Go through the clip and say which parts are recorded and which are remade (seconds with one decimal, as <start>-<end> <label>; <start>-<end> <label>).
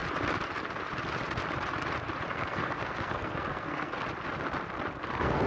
0.0-2.3 recorded; 2.3-3.9 remade; 3.9-5.0 recorded; 5.0-5.5 remade